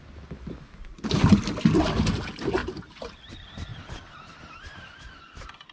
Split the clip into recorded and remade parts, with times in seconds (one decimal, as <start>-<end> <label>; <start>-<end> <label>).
0.0-2.6 recorded; 2.6-3.3 remade; 3.3-5.7 recorded